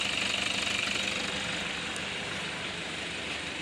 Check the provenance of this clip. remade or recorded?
recorded